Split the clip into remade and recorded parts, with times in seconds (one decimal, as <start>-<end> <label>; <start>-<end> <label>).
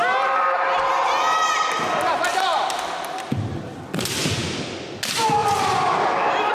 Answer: 0.0-2.3 recorded; 2.3-4.2 remade; 4.2-5.4 recorded; 5.4-6.5 remade